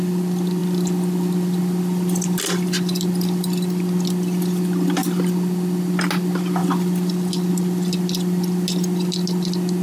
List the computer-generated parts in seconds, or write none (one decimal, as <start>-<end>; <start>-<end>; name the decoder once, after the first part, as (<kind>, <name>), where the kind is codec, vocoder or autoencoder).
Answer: none

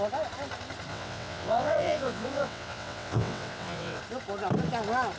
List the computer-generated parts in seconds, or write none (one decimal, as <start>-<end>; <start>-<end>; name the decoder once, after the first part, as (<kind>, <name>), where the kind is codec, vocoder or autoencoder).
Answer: 0.9-4.0 (vocoder, WaveNeXt)